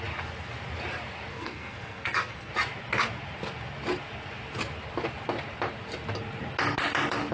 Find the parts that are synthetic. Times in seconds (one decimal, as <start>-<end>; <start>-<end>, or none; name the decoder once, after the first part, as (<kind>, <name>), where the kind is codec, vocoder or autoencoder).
1.3-2.5 (codec, SNAC)